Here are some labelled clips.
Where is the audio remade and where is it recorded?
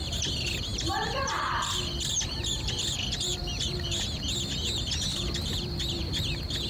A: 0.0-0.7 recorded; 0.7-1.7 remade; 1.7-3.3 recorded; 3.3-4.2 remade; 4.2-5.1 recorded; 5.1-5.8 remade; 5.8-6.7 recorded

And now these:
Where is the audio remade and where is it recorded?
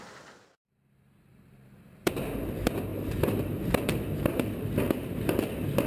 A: 0.0-1.3 recorded; 1.3-2.2 remade; 2.2-2.9 recorded; 2.9-5.3 remade; 5.3-5.9 recorded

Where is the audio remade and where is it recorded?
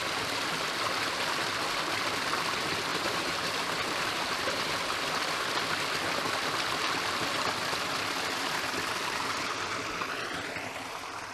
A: 0.0-2.9 recorded; 2.9-4.7 remade; 4.7-11.3 recorded